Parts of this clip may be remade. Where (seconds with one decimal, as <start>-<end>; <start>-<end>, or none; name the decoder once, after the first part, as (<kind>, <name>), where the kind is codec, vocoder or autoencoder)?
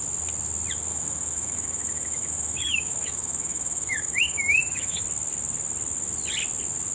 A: 0.9-5.0 (autoencoder, DAC-VAE)